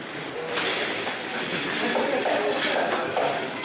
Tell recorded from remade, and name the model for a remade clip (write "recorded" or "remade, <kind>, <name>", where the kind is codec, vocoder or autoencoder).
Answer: recorded